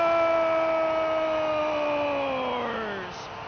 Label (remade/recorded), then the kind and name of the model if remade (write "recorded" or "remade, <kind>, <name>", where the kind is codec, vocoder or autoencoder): recorded